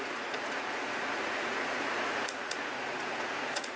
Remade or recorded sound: remade